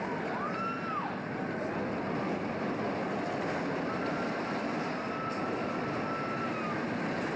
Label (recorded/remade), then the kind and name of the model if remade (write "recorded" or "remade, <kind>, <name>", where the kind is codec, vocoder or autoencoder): recorded